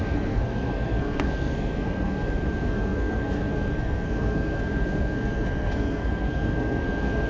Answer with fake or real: fake